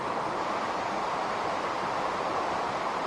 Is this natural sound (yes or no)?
yes